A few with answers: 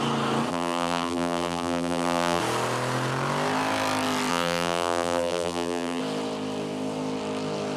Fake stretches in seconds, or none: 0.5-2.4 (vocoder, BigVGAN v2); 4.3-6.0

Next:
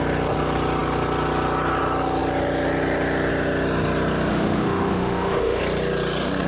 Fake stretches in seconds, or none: 4.3-5.6 (autoencoder, DAC-VAE)

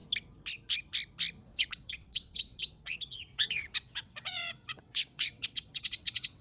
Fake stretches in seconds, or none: 1.4-6.4 (vocoder, WaveNeXt)

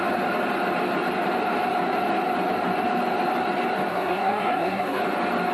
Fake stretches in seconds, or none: 3.9-5.0 (codec, SNAC)

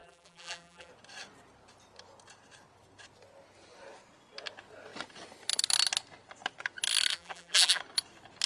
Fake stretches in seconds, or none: 0.0-0.9 (vocoder, BigVGAN v2); 7.1-7.8

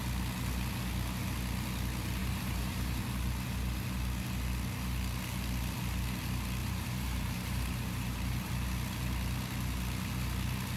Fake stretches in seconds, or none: 2.2-3.0 (vocoder, BigVGAN v2); 6.6-8.5